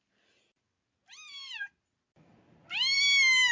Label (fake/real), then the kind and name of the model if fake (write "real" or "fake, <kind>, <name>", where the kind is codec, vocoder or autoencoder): real